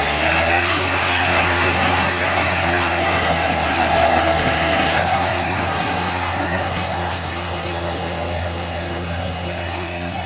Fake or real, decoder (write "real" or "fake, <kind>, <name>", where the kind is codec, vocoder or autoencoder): fake, codec, SNAC